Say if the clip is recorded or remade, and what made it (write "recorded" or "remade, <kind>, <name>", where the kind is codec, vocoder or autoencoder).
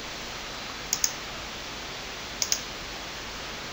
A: recorded